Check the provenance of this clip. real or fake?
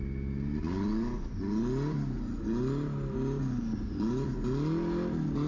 real